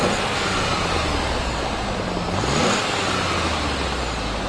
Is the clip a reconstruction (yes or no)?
no